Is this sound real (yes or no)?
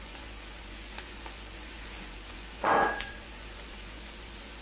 no